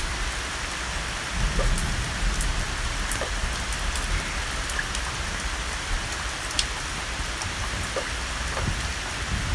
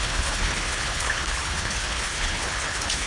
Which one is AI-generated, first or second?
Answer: second